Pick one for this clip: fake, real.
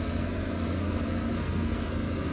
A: fake